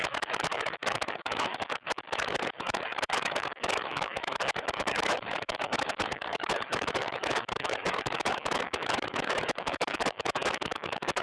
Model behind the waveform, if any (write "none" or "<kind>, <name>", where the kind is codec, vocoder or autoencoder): autoencoder, DAC-VAE